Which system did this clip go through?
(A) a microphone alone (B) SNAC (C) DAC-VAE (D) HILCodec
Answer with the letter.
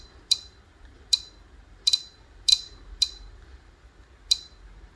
A